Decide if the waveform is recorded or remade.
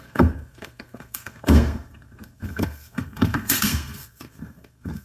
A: remade